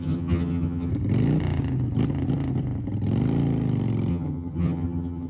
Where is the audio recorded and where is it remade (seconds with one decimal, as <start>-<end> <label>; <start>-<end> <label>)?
0.0-0.9 remade; 0.9-4.1 recorded; 4.1-5.3 remade